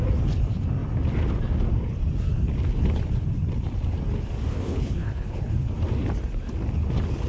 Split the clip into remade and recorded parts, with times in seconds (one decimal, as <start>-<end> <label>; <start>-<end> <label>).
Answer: 0.0-4.5 recorded; 4.5-5.5 remade; 5.5-7.3 recorded